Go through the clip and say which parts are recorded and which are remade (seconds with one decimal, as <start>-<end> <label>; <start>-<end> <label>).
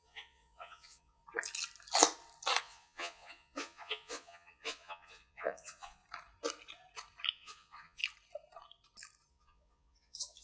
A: 0.0-1.2 remade; 1.2-2.6 recorded; 2.6-6.0 remade; 6.0-7.3 recorded; 7.3-8.0 remade; 8.0-9.3 recorded; 9.3-10.4 remade